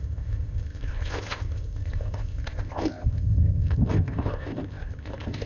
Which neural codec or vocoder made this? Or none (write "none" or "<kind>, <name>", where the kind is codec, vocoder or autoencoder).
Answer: codec, ZipCodec